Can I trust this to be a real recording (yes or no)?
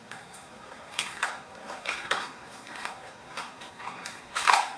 no